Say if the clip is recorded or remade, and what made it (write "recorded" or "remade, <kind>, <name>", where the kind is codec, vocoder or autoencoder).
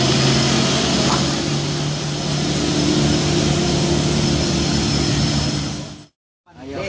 recorded